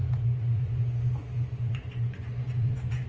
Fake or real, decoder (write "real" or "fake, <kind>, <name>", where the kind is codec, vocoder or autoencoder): fake, vocoder, Vocos